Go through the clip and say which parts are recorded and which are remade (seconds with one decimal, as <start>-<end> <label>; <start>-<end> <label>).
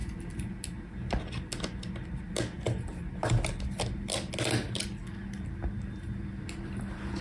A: 0.0-7.2 recorded